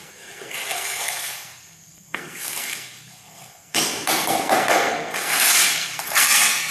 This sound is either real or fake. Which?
fake